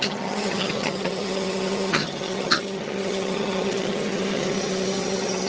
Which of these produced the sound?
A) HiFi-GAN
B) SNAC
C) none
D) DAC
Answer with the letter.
A